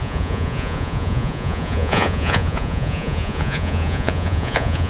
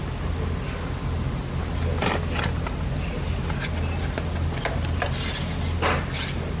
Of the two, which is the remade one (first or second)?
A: first